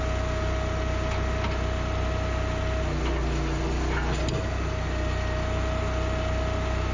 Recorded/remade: recorded